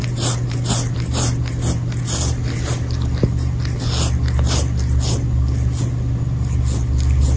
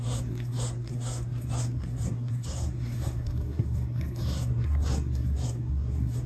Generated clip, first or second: second